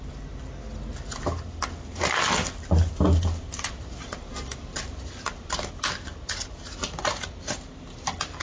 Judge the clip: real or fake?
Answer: real